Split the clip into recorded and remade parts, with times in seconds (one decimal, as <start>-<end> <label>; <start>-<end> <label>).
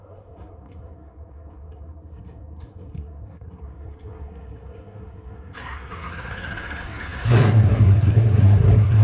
0.0-9.0 remade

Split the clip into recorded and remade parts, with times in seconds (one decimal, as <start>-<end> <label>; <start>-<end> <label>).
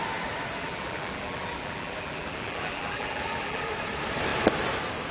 0.0-0.6 recorded; 0.6-3.7 remade; 3.7-5.1 recorded